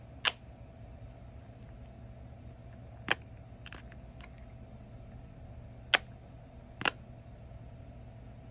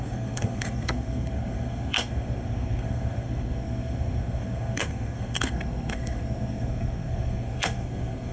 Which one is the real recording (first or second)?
first